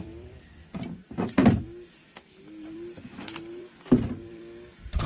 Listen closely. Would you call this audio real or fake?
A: fake